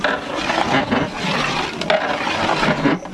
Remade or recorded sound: recorded